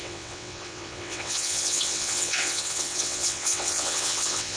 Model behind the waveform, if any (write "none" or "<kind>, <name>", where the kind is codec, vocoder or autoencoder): vocoder, WaveNeXt